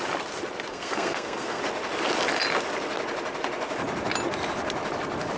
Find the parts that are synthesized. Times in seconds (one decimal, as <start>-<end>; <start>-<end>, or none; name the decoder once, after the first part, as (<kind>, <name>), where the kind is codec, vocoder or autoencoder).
0.7-1.6 (codec, SNAC)